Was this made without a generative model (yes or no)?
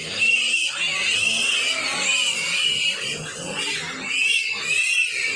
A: yes